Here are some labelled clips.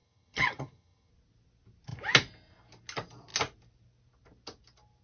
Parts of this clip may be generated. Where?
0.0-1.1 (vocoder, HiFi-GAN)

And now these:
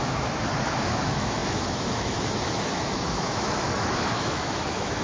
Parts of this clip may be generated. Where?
0.0-5.0 (autoencoder, DAC-VAE)

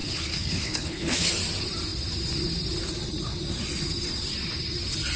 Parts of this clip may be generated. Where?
0.0-1.3 (codec, HILCodec)